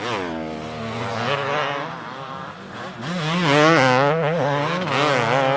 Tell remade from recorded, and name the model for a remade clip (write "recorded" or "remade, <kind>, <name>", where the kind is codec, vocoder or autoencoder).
recorded